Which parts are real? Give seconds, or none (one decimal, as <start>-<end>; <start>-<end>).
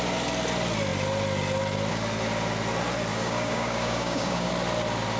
0.0-3.1; 4.5-5.2